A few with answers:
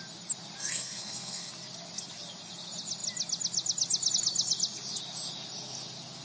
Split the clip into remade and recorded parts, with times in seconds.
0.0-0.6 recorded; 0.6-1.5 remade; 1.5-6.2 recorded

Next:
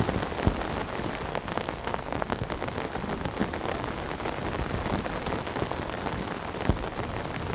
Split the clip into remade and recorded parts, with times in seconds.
0.0-1.3 recorded; 1.3-2.5 remade; 2.5-7.5 recorded